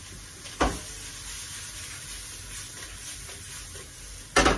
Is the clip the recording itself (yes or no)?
yes